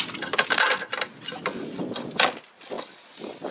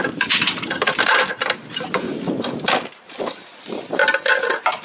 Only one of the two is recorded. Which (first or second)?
first